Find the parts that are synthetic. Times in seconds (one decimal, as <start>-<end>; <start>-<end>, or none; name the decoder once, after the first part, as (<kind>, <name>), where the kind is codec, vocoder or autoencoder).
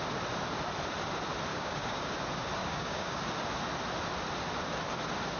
1.5-2.1 (codec, DAC); 2.6-3.2